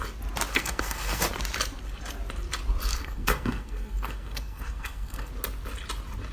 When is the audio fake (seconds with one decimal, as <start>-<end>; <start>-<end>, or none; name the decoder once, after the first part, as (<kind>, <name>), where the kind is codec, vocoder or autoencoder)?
0.5-1.2 (codec, SNAC); 2.9-5.3